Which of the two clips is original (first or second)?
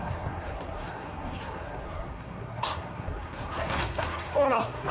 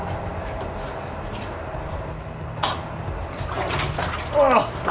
second